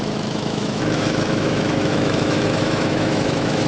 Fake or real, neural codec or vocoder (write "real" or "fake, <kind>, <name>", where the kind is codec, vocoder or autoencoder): fake, autoencoder, DAC-VAE